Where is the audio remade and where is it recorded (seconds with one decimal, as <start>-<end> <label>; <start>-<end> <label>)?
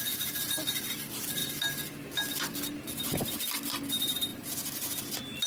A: 0.0-5.5 recorded